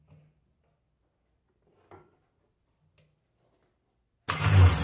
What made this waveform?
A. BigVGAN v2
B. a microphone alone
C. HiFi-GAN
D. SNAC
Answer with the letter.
B